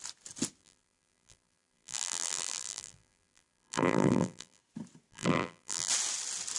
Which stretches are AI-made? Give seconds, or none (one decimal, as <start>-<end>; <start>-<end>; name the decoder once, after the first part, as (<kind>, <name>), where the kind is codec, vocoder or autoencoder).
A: 0.6-4.6 (vocoder, BigVGAN v2); 5.1-5.9